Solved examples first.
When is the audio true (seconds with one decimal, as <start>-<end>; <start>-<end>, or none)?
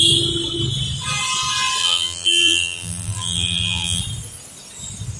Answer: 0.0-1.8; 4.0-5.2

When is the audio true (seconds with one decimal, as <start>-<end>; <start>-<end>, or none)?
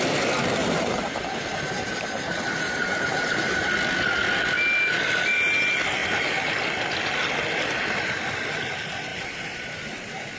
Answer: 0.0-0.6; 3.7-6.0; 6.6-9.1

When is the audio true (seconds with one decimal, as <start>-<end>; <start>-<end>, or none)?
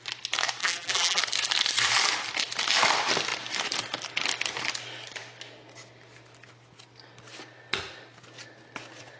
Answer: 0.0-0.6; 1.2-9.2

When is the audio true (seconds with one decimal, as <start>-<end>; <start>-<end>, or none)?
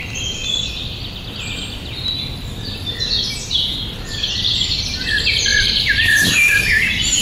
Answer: 0.0-7.2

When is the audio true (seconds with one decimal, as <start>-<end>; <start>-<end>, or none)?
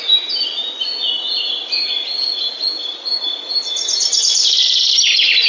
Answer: 0.9-4.2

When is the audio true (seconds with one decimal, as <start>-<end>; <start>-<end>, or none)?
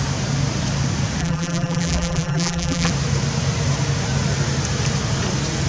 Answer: 0.0-1.2; 2.9-5.7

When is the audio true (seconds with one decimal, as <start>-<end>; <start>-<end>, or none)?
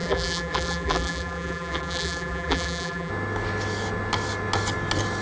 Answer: 3.1-5.2